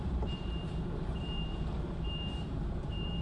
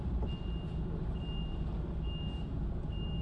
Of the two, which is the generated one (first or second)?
first